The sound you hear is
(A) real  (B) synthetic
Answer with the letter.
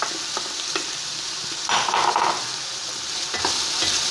A